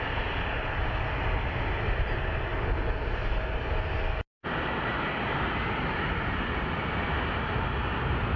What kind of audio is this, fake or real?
real